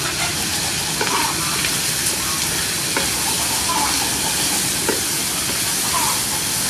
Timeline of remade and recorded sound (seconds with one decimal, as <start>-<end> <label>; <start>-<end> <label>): 0.0-6.7 recorded